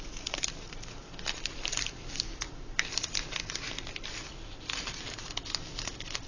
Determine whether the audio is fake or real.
real